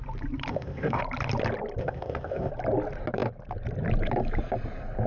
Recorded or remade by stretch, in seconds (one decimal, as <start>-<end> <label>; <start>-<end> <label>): 0.0-0.5 recorded; 0.5-1.0 remade; 1.0-1.8 recorded; 1.8-2.5 remade; 2.5-5.1 recorded